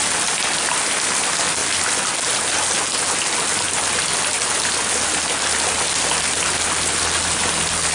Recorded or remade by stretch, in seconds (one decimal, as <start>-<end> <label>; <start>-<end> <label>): 0.0-7.9 recorded